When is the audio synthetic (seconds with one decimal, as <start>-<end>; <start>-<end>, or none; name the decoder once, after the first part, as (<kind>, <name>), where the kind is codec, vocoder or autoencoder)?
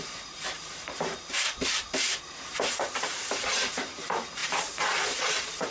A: 0.0-5.7 (vocoder, BigVGAN v2)